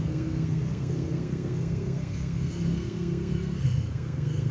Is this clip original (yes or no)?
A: no